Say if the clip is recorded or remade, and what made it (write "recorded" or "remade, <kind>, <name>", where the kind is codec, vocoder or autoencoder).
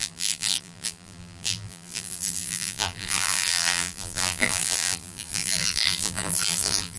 remade, vocoder, BigVGAN v2